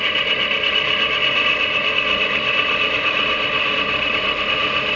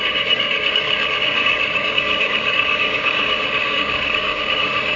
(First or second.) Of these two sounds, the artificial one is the second